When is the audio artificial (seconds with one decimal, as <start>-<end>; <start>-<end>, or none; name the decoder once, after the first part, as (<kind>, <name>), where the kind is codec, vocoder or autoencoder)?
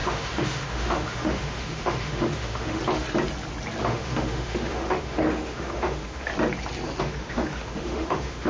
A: 0.0-2.8 (autoencoder, DAC-VAE); 3.8-6.3; 7.0-8.5